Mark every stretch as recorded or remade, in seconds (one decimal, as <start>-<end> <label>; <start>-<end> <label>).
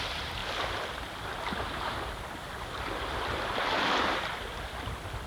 0.0-5.3 recorded